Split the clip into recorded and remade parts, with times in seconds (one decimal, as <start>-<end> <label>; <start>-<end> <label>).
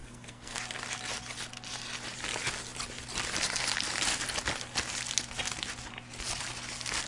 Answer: 0.0-0.6 remade; 0.6-7.1 recorded